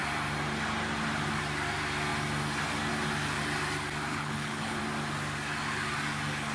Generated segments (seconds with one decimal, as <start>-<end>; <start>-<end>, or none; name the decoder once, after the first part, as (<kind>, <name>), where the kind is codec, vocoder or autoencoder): 4.1-4.8 (codec, HILCodec)